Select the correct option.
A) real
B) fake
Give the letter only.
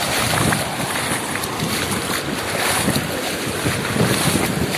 A